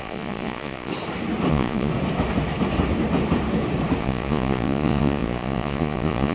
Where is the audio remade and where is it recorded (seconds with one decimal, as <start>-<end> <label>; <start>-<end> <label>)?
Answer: 0.0-0.9 remade; 0.9-1.5 recorded; 1.5-1.9 remade; 1.9-4.0 recorded; 4.0-6.3 remade